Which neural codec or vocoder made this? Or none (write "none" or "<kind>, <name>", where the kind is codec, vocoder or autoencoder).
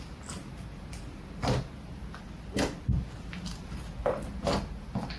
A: none